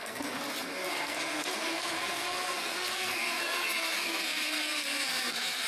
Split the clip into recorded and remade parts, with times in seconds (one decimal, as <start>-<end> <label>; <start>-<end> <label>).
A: 0.0-5.7 remade